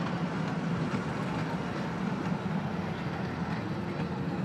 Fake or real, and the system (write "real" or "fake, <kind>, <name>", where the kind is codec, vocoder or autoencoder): real